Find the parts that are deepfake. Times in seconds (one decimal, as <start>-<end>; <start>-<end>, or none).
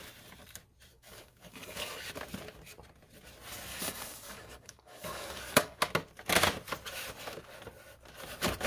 0.9-1.9; 3.7-5.8